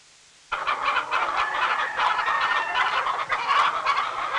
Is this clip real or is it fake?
real